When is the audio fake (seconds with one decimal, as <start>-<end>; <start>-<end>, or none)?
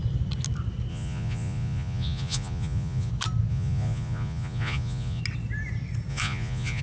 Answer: 0.9-3.1; 3.5-5.2; 6.1-6.8